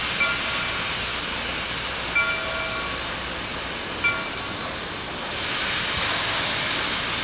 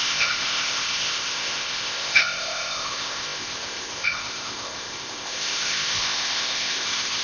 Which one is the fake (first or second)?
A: second